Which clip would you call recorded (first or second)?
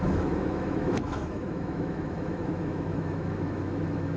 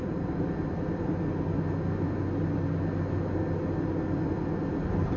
second